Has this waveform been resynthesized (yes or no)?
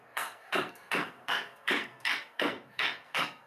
yes